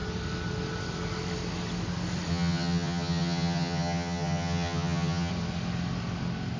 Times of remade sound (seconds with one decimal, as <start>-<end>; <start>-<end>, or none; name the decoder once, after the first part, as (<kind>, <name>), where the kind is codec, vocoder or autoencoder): 2.3-5.3 (vocoder, HiFi-GAN)